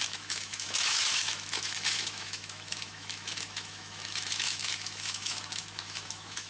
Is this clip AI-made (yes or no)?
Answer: yes